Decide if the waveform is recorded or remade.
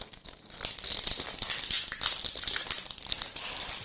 recorded